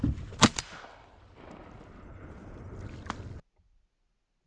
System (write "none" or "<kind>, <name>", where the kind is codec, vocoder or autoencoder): none